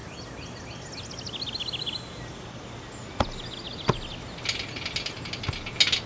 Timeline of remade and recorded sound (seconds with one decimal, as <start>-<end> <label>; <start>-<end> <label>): 0.0-6.1 recorded